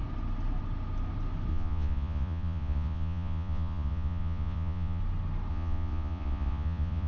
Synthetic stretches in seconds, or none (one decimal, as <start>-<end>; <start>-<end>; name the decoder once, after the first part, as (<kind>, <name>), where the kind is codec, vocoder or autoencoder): 1.5-5.0 (vocoder, Vocos); 5.5-7.1